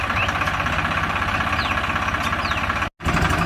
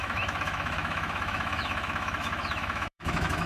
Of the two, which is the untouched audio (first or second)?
first